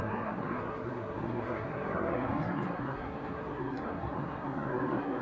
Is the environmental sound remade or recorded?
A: remade